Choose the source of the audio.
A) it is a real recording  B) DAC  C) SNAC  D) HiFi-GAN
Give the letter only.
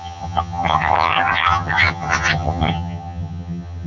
D